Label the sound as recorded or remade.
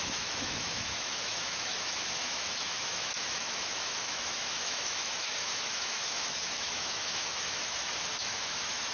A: remade